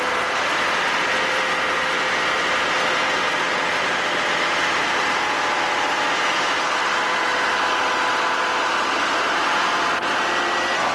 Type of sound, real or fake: real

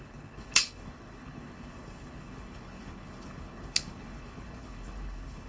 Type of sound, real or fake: fake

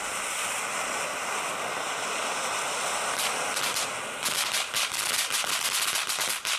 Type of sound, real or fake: real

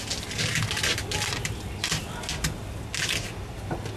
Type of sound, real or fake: real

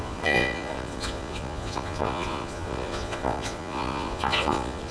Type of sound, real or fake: fake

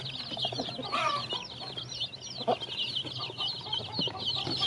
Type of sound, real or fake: real